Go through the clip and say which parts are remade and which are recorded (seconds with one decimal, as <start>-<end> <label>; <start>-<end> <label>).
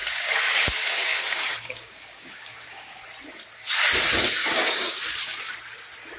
0.0-3.0 remade; 3.0-4.4 recorded; 4.4-5.5 remade; 5.5-6.2 recorded